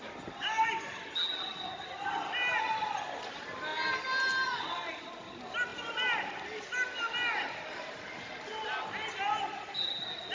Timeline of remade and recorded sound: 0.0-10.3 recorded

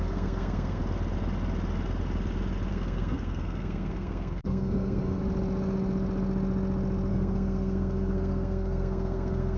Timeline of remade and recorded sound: 0.0-0.8 remade; 0.8-2.7 recorded; 2.7-5.2 remade; 5.2-7.1 recorded; 7.1-9.6 remade

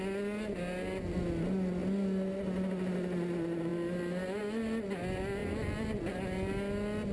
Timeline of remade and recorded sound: 0.0-7.1 recorded

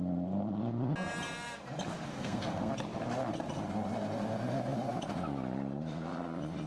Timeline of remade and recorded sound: 0.0-2.1 recorded; 2.1-2.7 remade; 2.7-6.7 recorded

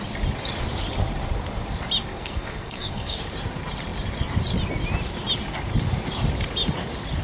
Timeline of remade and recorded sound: 0.0-2.1 recorded; 2.1-3.2 remade; 3.2-7.2 recorded

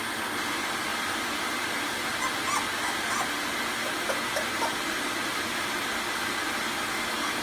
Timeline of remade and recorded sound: 0.0-7.4 recorded

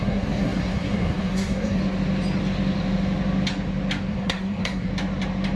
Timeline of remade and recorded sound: 0.0-1.8 remade; 1.8-4.1 recorded; 4.1-4.9 remade; 4.9-5.6 recorded

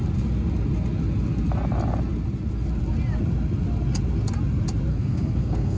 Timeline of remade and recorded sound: 0.0-4.9 recorded; 4.9-5.8 remade